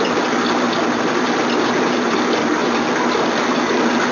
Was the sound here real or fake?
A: real